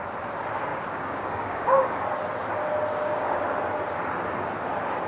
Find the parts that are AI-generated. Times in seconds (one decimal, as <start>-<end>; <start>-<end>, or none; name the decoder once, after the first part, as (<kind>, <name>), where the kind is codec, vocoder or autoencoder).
0.7-2.0 (codec, DAC); 2.9-3.4